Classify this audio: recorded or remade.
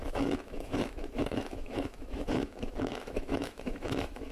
remade